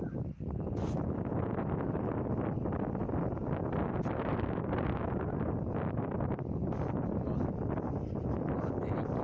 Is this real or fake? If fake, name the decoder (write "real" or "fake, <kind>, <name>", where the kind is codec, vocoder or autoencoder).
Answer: real